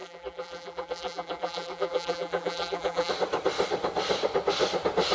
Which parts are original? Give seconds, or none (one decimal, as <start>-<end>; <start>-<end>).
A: 3.1-5.1